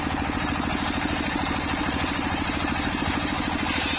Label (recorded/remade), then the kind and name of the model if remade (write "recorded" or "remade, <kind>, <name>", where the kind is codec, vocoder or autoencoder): remade, vocoder, BigVGAN v2